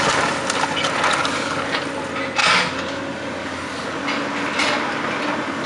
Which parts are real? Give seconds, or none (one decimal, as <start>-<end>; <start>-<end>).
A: 0.0-1.2; 1.8-2.4; 3.0-3.4; 4.0-5.7